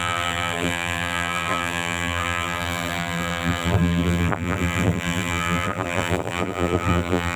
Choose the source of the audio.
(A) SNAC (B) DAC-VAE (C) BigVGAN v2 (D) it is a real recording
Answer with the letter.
C